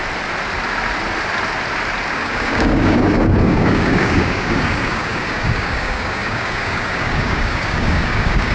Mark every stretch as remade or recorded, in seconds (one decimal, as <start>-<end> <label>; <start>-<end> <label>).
0.0-2.1 recorded; 2.1-8.5 remade